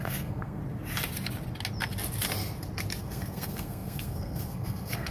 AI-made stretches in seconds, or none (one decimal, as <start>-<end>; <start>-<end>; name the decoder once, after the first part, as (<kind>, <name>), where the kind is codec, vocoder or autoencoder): 0.0-0.6 (codec, SNAC); 3.0-5.1